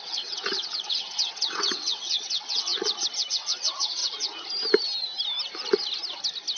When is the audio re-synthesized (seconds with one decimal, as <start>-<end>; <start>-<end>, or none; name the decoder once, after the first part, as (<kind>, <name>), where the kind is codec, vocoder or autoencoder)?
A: 0.0-2.7 (vocoder, WaveNeXt); 3.3-4.0